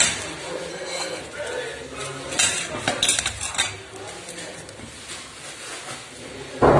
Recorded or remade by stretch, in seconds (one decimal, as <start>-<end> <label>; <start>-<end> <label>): 0.0-0.7 recorded; 0.7-1.2 remade; 1.2-6.8 recorded